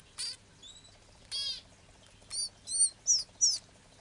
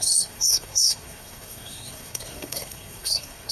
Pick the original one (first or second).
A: first